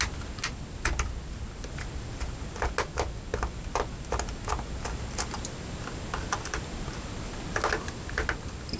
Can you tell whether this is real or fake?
real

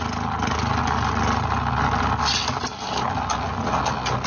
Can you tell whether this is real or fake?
real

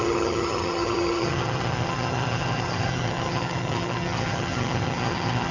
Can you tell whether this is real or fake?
fake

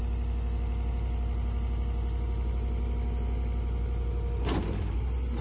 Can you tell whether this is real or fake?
real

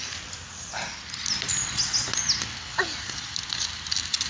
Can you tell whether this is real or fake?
real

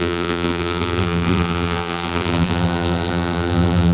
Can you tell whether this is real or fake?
fake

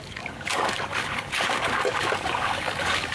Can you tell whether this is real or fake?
fake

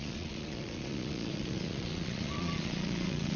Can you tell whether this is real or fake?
fake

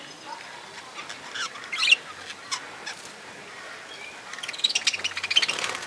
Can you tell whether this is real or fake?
real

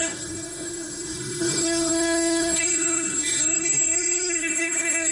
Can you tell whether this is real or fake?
fake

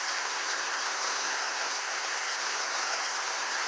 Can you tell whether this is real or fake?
fake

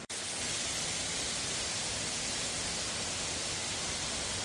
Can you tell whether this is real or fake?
real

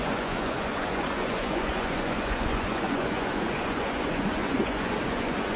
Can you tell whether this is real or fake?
fake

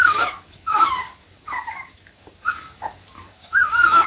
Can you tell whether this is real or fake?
fake